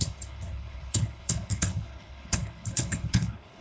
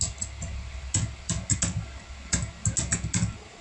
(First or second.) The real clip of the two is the second